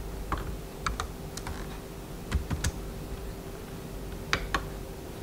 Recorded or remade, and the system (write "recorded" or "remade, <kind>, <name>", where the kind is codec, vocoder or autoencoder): recorded